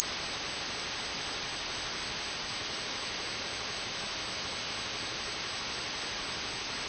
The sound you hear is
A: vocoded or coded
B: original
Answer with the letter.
B